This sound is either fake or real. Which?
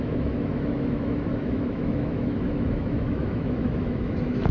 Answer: fake